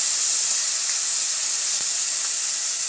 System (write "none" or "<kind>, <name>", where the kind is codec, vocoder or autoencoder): none